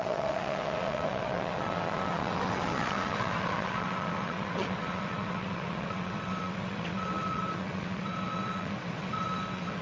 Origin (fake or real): fake